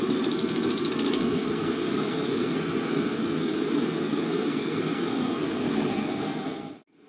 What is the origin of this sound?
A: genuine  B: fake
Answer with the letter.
B